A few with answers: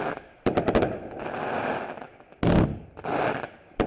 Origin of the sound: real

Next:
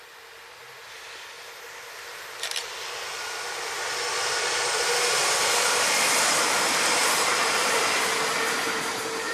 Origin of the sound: fake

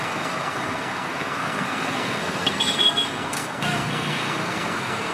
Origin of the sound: fake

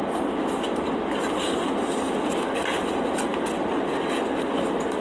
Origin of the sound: real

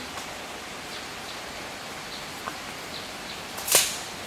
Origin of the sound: fake